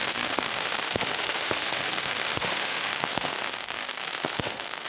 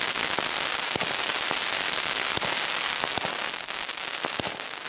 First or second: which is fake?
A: first